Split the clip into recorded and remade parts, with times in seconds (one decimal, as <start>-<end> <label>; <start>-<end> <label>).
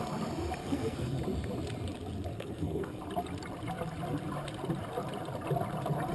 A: 0.0-0.6 recorded; 0.6-1.2 remade; 1.2-2.3 recorded; 2.3-3.0 remade; 3.0-6.1 recorded